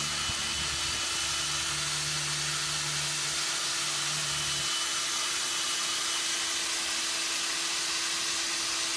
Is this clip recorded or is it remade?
recorded